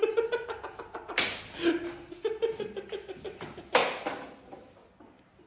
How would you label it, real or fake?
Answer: real